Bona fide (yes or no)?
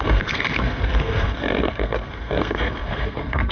no